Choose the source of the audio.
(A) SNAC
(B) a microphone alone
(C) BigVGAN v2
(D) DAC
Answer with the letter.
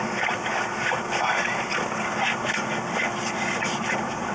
B